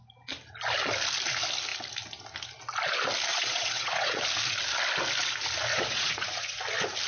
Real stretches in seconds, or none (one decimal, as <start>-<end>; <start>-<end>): 0.0-3.3; 4.2-5.7; 6.6-7.1